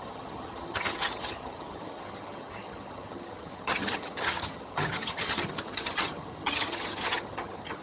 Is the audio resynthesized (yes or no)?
yes